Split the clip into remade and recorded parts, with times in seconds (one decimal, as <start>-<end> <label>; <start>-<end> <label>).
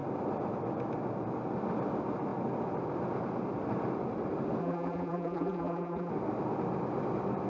0.0-4.6 recorded; 4.6-6.1 remade; 6.1-7.5 recorded